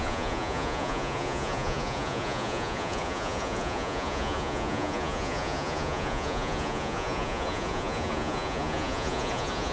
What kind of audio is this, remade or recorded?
remade